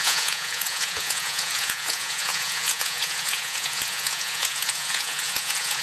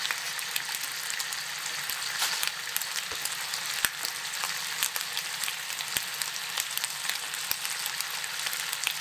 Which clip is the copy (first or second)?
first